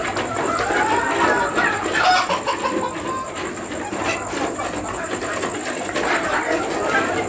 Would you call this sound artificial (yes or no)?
no